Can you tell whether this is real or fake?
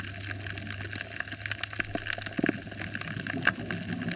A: real